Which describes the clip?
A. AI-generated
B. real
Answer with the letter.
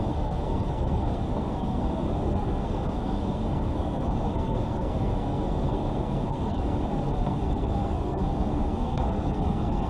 A